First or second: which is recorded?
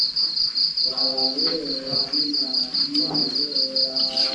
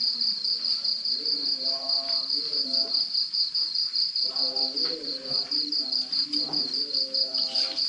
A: first